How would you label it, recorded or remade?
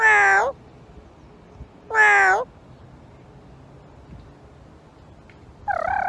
recorded